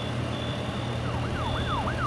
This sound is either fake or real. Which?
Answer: fake